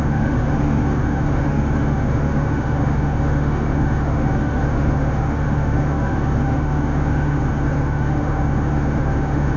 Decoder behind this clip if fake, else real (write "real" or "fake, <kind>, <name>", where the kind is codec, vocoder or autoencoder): fake, autoencoder, DAC-VAE